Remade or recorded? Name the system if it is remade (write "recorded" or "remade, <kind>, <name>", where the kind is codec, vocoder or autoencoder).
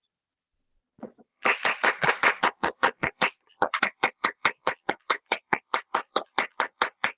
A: remade, vocoder, Vocos